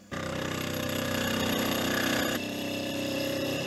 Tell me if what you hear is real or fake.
fake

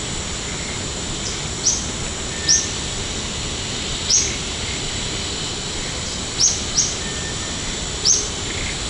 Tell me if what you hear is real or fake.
real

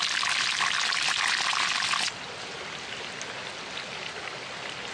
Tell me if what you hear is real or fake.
real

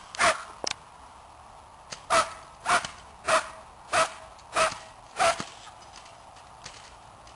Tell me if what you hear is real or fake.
real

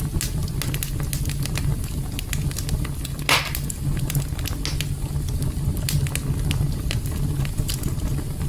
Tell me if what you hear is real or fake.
real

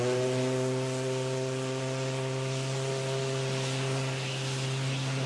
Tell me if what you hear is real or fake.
real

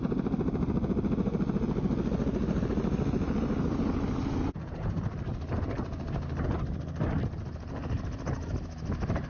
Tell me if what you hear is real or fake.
real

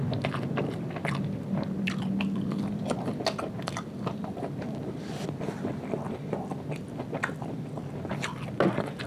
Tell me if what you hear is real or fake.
real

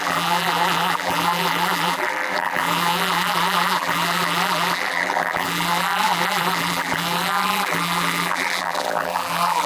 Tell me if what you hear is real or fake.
fake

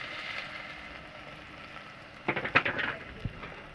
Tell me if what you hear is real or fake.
real